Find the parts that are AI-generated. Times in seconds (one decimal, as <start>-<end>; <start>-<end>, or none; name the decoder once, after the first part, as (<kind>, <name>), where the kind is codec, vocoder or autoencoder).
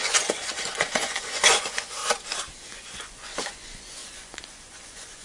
0.0-2.0 (vocoder, Vocos); 2.6-5.2